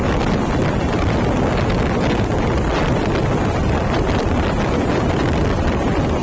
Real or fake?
real